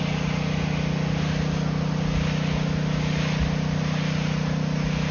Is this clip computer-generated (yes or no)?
no